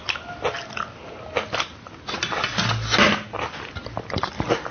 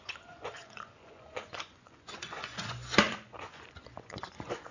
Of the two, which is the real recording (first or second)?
first